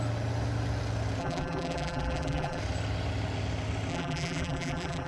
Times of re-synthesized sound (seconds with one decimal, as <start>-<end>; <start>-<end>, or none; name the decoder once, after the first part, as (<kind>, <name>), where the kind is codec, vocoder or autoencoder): 1.2-2.6 (vocoder, BigVGAN v2); 3.9-5.1